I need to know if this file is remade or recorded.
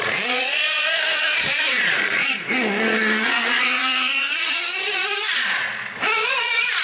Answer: remade